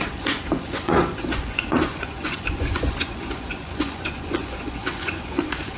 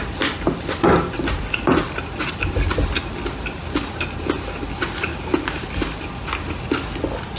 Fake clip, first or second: first